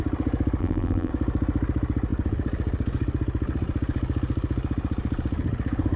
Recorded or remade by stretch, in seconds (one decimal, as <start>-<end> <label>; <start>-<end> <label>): 0.0-0.6 recorded; 0.6-1.1 remade; 1.1-6.0 recorded